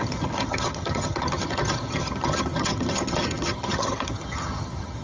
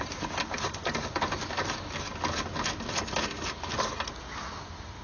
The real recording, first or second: second